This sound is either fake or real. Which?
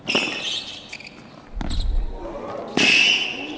real